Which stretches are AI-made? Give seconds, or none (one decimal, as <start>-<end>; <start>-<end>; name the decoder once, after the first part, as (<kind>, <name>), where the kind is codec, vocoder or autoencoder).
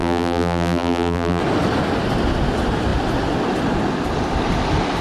0.0-1.4 (vocoder, BigVGAN v2)